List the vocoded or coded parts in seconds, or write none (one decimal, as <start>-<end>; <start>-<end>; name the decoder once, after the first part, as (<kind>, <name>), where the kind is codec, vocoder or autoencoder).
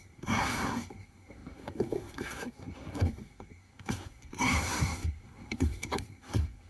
0.0-6.7 (codec, SNAC)